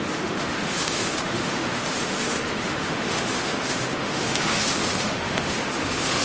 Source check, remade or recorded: remade